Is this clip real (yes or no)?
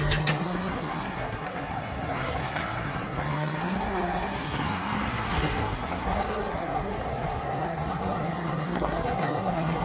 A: no